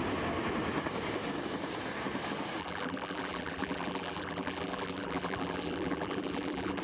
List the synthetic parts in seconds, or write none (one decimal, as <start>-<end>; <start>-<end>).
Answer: 2.6-6.8